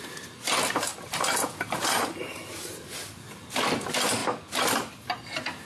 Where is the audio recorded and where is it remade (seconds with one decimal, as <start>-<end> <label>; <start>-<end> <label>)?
0.0-5.7 recorded

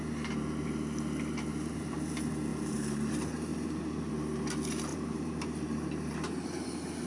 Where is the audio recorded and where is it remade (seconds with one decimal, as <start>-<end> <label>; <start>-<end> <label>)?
0.0-1.5 recorded; 1.5-2.1 remade; 2.1-2.5 recorded; 2.5-3.1 remade; 3.1-3.5 recorded; 3.5-4.1 remade; 4.1-4.9 recorded; 4.9-7.1 remade